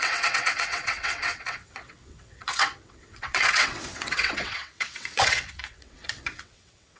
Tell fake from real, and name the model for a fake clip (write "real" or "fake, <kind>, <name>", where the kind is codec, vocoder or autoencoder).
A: fake, vocoder, WaveNeXt